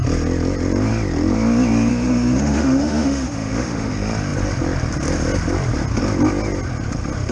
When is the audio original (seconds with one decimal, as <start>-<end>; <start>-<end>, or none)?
0.0-1.9; 3.9-7.3